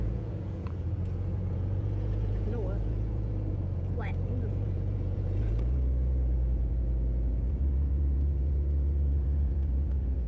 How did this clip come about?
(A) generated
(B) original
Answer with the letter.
A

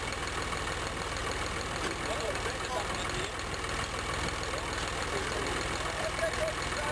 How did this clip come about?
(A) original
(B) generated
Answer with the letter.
A